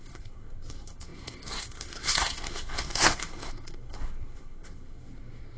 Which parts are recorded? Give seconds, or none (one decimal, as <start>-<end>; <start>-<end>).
none